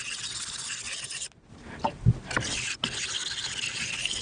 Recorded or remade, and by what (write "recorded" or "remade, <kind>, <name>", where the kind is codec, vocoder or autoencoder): recorded